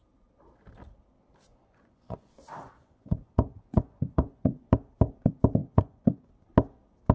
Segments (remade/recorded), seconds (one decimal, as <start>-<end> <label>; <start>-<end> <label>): 0.0-1.5 recorded; 1.5-2.3 remade; 2.3-2.8 recorded; 2.8-4.7 remade; 4.7-5.6 recorded; 5.6-6.3 remade; 6.3-7.1 recorded